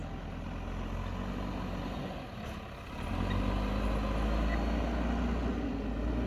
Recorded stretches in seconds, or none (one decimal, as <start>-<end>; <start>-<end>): 0.0-6.3